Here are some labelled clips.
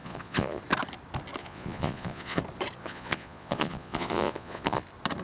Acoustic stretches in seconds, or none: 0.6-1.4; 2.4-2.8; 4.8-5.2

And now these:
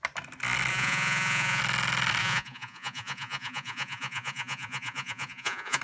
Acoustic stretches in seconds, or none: 0.0-0.7; 1.6-2.2

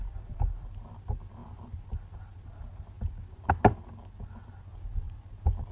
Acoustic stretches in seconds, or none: 0.0-5.7

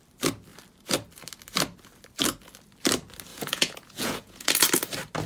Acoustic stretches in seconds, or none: 0.0-3.3; 4.5-5.3

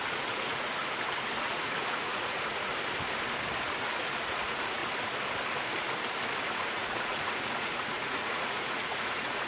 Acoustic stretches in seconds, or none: 0.8-1.4; 2.7-3.8; 4.8-6.4

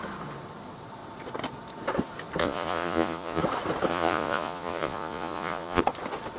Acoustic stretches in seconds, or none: 0.0-2.4; 3.4-3.9; 5.8-6.4

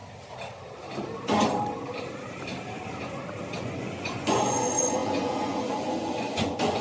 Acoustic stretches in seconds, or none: 0.0-3.6

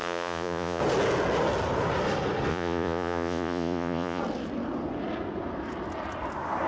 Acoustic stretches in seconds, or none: 0.8-2.5; 4.2-6.7